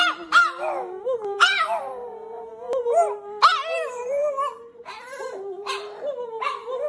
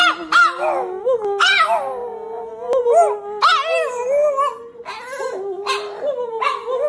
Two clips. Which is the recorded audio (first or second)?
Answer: second